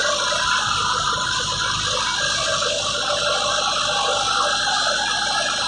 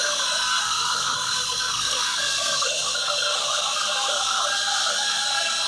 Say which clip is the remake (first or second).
second